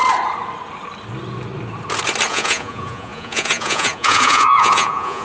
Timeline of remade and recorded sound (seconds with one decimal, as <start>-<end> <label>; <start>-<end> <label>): 0.0-2.3 recorded; 2.3-5.2 remade